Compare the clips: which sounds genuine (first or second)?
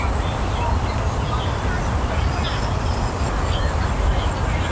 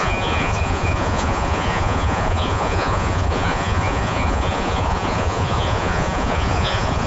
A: first